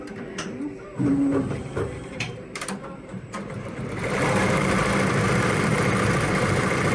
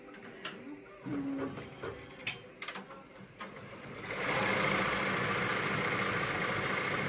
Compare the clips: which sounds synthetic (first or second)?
first